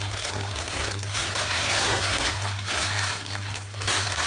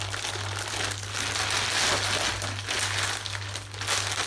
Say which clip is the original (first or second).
second